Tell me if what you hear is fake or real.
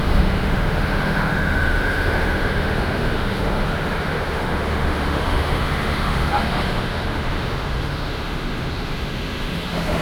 fake